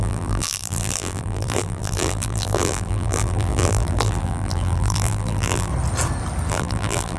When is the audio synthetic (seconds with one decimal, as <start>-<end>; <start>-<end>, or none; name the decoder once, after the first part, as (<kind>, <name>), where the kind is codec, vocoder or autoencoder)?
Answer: 0.0-5.7 (vocoder, BigVGAN v2); 6.5-7.2